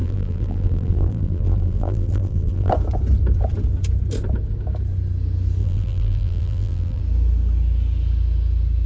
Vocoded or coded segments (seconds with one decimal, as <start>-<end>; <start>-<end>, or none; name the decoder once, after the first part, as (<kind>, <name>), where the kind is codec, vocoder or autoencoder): 0.0-2.7 (vocoder, BigVGAN v2); 5.6-7.0